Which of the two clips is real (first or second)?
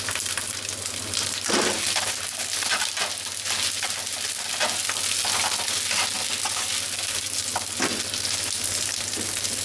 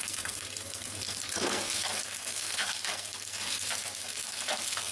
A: first